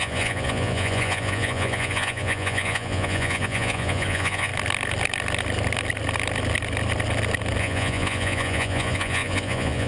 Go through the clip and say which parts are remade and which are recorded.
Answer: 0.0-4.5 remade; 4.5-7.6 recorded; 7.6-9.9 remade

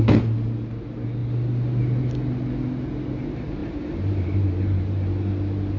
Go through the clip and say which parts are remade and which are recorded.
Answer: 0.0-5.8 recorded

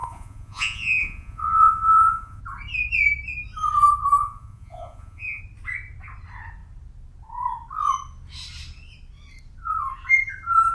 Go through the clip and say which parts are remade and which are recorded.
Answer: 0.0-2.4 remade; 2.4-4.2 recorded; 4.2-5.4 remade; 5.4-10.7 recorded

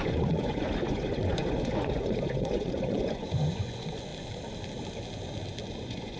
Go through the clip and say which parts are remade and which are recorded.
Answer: 0.0-4.1 remade; 4.1-5.8 recorded; 5.8-6.2 remade

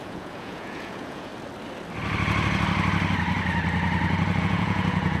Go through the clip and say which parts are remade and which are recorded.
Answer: 0.0-1.3 remade; 1.3-4.4 recorded; 4.4-5.2 remade

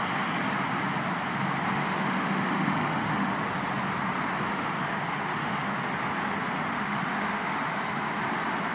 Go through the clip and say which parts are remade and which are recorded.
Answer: 0.0-1.7 recorded; 1.7-3.3 remade; 3.3-4.5 recorded; 4.5-5.7 remade; 5.7-6.7 recorded; 6.7-8.2 remade; 8.2-8.7 recorded

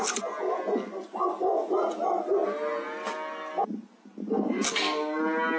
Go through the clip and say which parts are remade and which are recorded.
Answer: 0.0-5.6 recorded

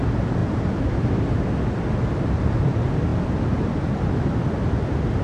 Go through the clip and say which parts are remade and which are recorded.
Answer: 0.0-0.4 recorded; 0.4-1.3 remade; 1.3-5.2 recorded